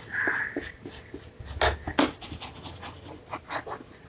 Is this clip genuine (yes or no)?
yes